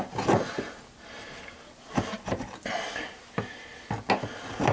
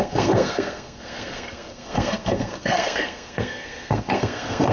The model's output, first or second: second